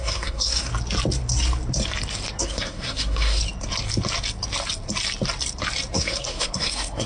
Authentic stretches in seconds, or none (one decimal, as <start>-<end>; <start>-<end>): 0.7-2.4; 3.4-5.9